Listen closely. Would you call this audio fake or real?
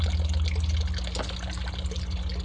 real